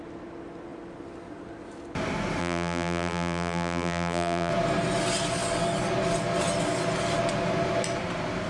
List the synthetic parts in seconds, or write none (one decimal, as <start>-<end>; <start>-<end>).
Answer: 2.4-4.5